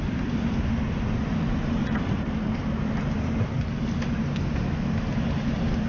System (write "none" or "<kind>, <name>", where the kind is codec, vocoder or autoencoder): none